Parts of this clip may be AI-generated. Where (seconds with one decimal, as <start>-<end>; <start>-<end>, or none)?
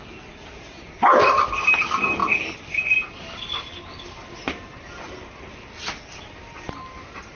none